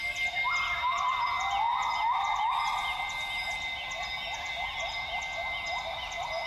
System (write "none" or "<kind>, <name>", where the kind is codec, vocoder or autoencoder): none